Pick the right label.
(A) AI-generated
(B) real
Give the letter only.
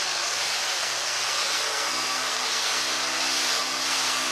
A